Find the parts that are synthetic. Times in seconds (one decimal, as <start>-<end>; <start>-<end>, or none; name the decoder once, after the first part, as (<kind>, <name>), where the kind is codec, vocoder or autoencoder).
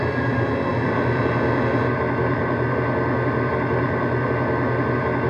none